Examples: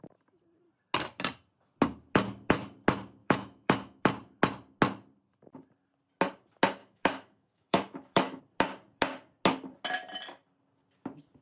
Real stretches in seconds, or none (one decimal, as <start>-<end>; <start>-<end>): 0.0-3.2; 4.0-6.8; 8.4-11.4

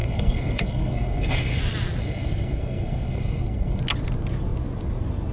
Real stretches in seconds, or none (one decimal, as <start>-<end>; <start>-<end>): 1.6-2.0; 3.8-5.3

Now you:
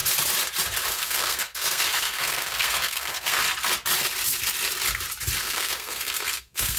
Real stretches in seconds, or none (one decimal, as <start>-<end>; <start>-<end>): 0.0-0.9; 3.4-5.4

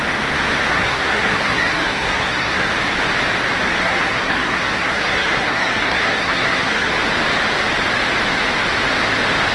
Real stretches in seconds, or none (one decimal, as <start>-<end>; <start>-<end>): 0.0-0.7; 2.7-3.8; 6.9-9.5

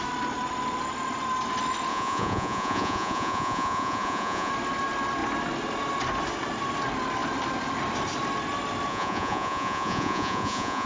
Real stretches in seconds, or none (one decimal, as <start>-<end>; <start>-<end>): 0.0-1.9; 4.5-8.9

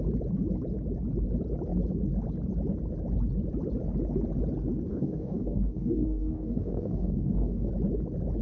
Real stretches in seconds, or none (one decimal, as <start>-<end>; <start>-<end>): 0.0-4.9; 7.7-8.4

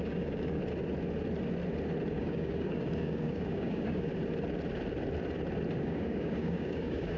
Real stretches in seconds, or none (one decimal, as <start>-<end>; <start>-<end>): 0.6-2.1; 4.1-5.8